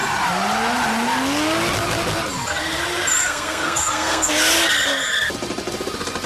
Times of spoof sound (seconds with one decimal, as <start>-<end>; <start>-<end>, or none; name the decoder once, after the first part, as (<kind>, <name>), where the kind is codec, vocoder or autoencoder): 3.2-4.3 (codec, SNAC)